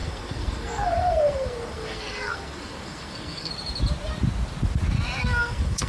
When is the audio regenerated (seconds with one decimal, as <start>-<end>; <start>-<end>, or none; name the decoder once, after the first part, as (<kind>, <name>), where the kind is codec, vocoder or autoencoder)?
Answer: 0.0-3.5 (codec, SNAC); 5.2-5.9